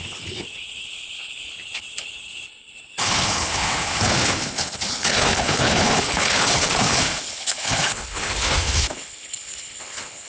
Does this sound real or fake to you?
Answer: fake